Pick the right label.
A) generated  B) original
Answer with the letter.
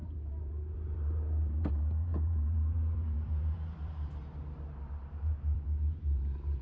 A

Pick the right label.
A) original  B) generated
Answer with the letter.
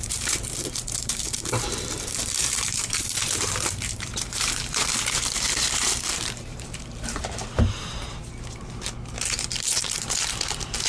B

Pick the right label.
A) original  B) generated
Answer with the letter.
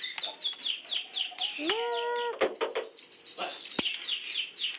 A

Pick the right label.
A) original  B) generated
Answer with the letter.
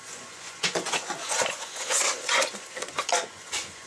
B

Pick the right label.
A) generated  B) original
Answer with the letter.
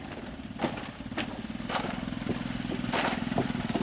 B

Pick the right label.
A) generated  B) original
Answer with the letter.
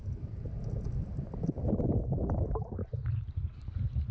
B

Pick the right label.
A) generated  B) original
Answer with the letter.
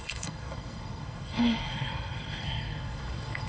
A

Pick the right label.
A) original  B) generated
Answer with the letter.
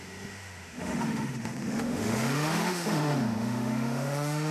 B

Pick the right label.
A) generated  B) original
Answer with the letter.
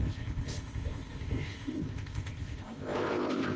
A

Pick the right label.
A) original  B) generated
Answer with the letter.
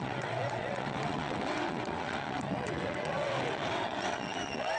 B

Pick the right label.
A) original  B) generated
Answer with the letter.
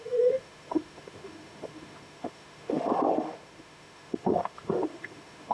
B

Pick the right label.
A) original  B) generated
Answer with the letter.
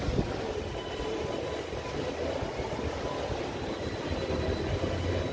A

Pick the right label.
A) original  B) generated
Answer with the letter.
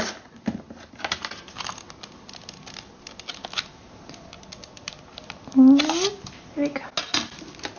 A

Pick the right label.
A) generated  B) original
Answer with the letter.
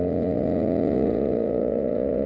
A